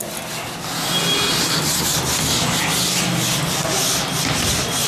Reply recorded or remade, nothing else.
recorded